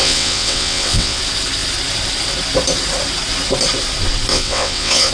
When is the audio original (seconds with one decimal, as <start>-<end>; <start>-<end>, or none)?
1.2-4.3